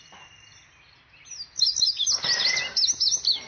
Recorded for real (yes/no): yes